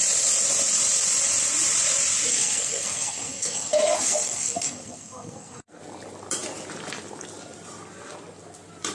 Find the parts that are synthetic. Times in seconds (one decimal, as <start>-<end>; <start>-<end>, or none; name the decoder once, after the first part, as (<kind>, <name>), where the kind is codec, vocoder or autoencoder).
2.3-5.8 (codec, SNAC)